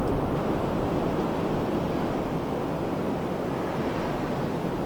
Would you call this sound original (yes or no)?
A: yes